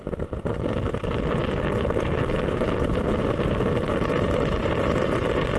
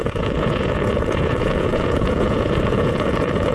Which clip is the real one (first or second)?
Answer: first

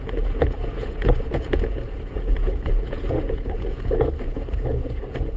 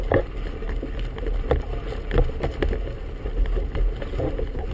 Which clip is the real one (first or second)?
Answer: second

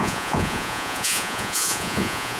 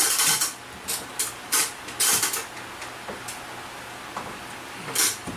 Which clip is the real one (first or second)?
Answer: second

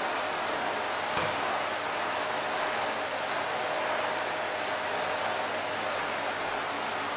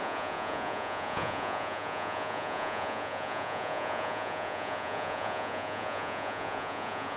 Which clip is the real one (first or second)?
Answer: first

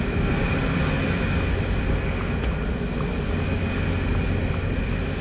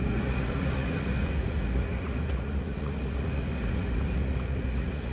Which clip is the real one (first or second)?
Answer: first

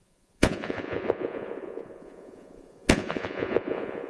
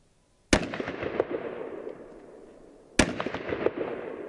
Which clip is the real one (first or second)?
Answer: second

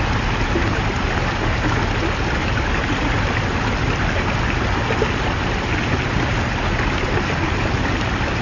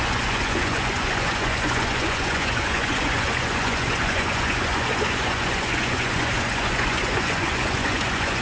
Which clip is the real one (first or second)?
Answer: first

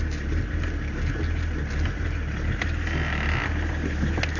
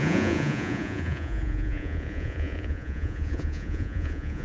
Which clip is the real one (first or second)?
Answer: first